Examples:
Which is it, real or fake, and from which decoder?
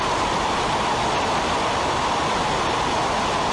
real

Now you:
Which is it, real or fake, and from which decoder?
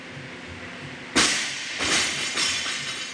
real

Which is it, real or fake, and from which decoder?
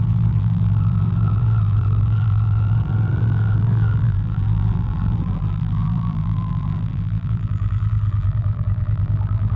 fake, vocoder, BigVGAN v2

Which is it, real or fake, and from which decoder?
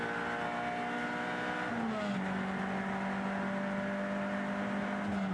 real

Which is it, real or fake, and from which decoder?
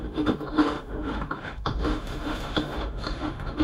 fake, autoencoder, DAC-VAE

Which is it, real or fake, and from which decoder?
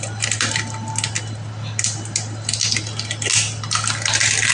real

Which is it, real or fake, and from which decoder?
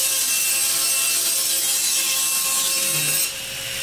real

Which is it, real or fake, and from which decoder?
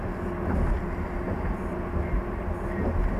real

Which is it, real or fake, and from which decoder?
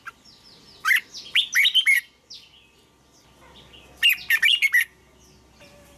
real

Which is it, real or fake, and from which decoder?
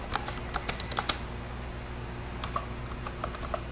real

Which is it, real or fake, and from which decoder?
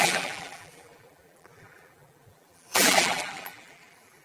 fake, vocoder, BigVGAN v2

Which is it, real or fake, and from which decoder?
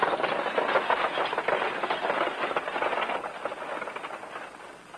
real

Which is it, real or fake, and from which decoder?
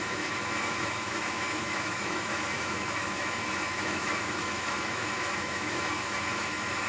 fake, autoencoder, DAC-VAE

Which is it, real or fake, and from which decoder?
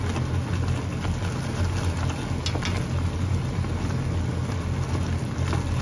real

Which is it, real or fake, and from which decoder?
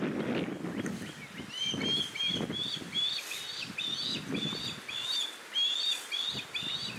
real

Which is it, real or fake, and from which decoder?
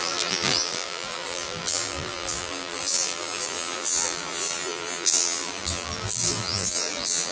fake, vocoder, BigVGAN v2